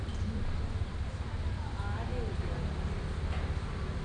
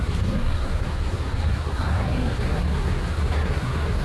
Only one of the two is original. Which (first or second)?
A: first